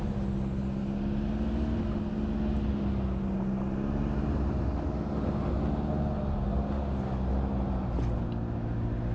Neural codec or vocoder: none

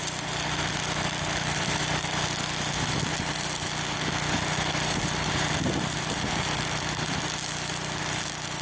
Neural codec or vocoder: none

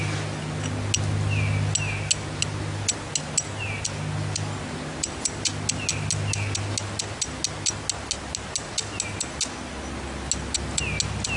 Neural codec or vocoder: none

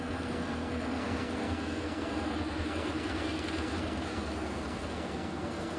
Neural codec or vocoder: codec, SNAC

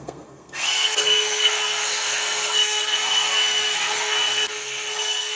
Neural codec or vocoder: codec, SNAC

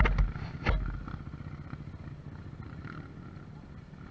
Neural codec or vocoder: none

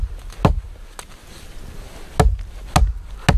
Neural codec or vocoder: none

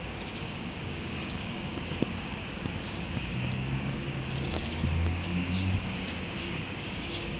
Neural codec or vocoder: codec, DAC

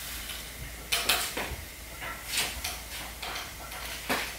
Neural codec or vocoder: none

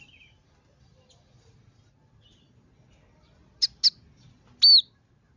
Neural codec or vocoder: none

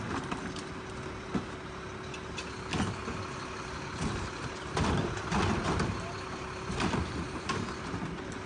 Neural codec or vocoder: none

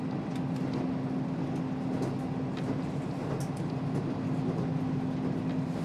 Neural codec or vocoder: none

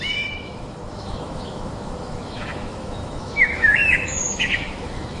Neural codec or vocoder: autoencoder, DAC-VAE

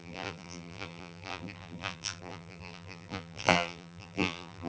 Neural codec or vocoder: vocoder, BigVGAN v2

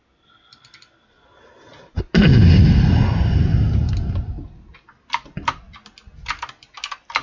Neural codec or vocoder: none